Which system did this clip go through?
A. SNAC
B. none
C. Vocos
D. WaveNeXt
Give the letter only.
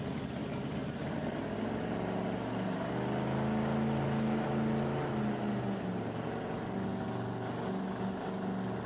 B